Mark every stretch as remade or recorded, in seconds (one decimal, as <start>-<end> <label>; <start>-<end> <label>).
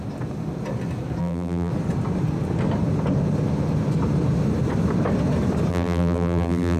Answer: 0.0-1.2 recorded; 1.2-1.7 remade; 1.7-5.7 recorded; 5.7-6.8 remade